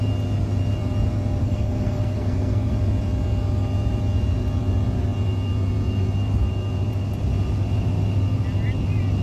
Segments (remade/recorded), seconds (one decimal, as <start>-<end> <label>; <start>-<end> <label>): 0.0-1.4 recorded; 1.4-2.7 remade; 2.7-9.2 recorded